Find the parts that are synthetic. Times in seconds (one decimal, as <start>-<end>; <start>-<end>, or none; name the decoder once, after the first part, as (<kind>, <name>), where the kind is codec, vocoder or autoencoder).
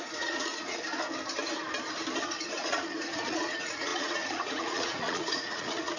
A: 0.0-0.8 (vocoder, Vocos); 2.2-6.0